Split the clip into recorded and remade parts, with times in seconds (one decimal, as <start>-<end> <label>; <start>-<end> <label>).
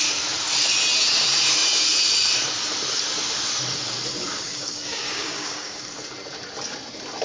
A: 0.0-4.4 recorded; 4.4-5.8 remade; 5.8-7.2 recorded